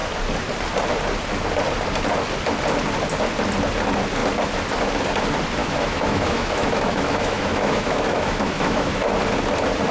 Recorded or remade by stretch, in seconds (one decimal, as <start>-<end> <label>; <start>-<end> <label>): 0.0-5.6 recorded; 5.6-9.1 remade; 9.1-9.9 recorded

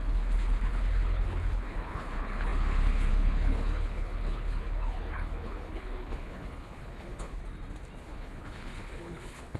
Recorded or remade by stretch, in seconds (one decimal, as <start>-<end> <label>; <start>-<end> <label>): 0.0-7.4 remade; 7.4-8.0 recorded; 8.0-9.6 remade

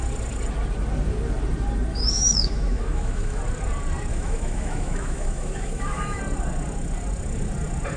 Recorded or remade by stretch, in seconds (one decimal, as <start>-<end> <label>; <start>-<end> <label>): 0.0-1.9 recorded; 1.9-3.4 remade; 3.4-4.1 recorded; 4.1-6.2 remade; 6.2-8.0 recorded

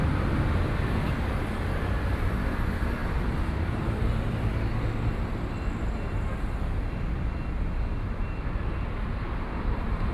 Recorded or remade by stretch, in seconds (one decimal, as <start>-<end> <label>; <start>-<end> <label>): 0.0-2.5 recorded; 2.5-4.5 remade; 4.5-9.6 recorded; 9.6-10.1 remade

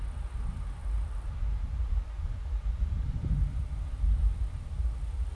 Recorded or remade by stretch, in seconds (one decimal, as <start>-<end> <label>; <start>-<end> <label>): 0.0-0.8 recorded; 0.8-4.0 remade; 4.0-4.6 recorded; 4.6-5.3 remade

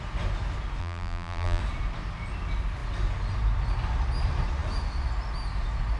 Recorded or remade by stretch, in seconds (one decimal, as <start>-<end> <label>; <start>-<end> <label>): 0.0-0.8 recorded; 0.8-1.6 remade; 1.6-6.0 recorded

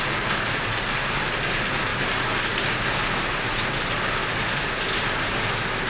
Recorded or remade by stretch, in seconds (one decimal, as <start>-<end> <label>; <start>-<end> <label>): 0.0-5.9 recorded